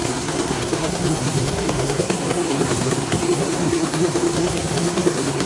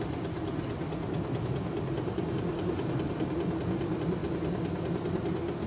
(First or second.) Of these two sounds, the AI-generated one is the first